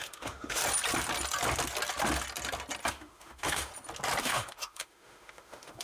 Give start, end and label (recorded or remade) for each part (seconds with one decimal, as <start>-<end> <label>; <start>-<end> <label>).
0.0-0.6 remade; 0.6-2.9 recorded; 2.9-3.7 remade; 3.7-4.2 recorded; 4.2-5.8 remade